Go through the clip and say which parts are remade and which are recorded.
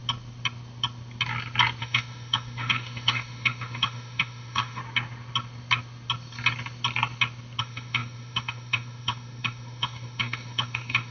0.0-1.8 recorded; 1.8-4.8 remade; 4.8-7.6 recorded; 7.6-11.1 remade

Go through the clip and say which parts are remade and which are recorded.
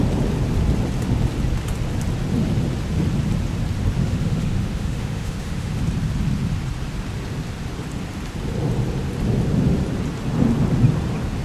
0.0-4.0 recorded; 4.0-5.7 remade; 5.7-11.4 recorded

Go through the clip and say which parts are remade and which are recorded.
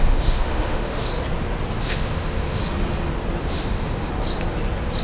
0.0-1.1 remade; 1.1-1.8 recorded; 1.8-2.6 remade; 2.6-3.4 recorded; 3.4-4.1 remade; 4.1-5.0 recorded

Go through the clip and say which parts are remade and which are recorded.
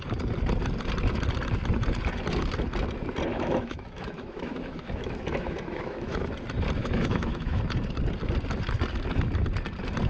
0.0-3.3 recorded; 3.3-6.3 remade; 6.3-6.8 recorded; 6.8-7.6 remade; 7.6-10.1 recorded